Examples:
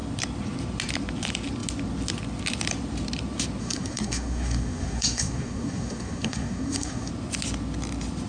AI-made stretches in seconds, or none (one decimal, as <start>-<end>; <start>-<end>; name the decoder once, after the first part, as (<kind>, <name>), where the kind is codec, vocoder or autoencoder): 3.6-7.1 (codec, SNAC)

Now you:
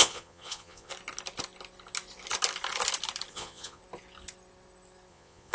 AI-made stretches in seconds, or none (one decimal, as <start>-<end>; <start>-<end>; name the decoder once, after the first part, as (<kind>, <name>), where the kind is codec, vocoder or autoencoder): 0.0-0.9 (vocoder, Vocos); 3.3-3.8; 5.1-5.5

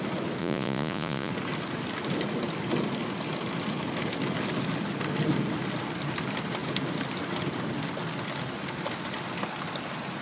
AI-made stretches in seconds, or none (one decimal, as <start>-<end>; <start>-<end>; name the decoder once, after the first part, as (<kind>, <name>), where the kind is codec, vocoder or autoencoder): 0.4-1.3 (vocoder, Vocos)

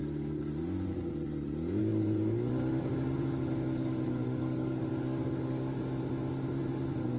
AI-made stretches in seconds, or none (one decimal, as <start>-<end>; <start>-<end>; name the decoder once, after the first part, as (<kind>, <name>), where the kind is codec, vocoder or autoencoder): 0.0-0.5 (codec, DAC); 1.8-5.8

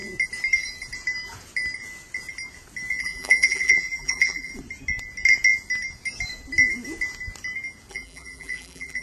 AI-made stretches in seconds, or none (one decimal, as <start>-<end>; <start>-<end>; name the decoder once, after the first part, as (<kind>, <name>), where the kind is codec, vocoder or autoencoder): 3.0-4.5 (vocoder, BigVGAN v2); 7.9-9.0

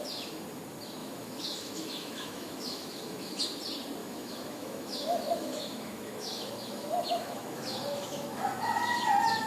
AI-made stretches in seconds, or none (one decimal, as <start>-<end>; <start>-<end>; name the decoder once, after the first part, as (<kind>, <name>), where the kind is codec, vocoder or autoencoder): 1.0-3.4 (autoencoder, DAC-VAE); 4.0-8.4